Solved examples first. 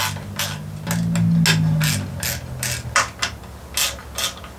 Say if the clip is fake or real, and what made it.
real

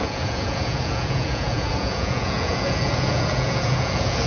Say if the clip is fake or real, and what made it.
fake, vocoder, Vocos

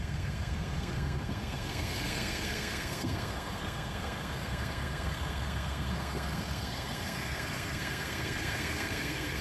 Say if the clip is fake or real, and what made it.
fake, codec, SNAC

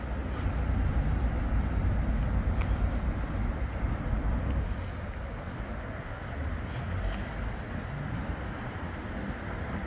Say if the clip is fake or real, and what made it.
real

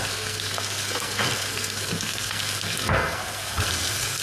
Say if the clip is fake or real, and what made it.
fake, codec, SNAC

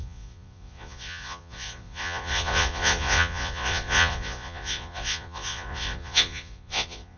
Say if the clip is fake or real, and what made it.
fake, vocoder, Vocos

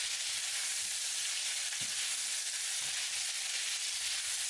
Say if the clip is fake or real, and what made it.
real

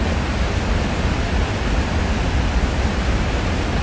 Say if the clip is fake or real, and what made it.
real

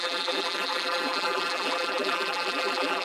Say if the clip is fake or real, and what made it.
fake, vocoder, BigVGAN v2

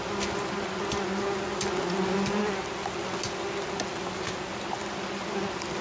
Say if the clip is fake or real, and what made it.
real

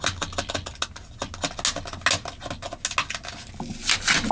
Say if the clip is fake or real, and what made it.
real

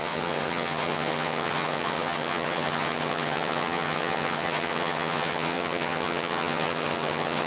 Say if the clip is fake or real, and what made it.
fake, vocoder, HiFi-GAN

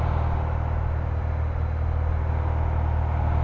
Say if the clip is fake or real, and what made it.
real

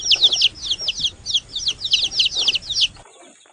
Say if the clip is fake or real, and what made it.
real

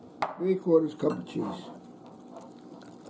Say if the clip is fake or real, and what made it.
real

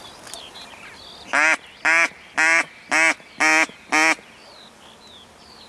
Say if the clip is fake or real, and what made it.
real